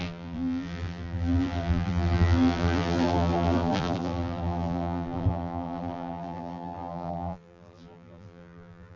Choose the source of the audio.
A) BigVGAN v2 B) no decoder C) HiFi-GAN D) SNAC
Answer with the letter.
A